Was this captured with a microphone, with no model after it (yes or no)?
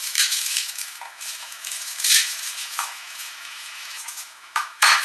no